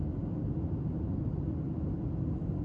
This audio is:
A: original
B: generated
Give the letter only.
A